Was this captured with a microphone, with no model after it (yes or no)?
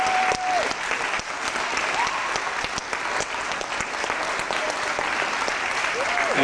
yes